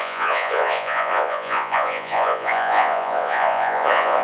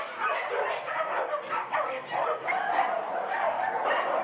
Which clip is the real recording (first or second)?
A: second